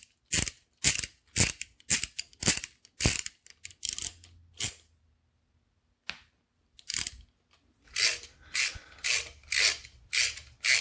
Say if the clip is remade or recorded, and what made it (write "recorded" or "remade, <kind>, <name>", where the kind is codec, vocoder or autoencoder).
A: recorded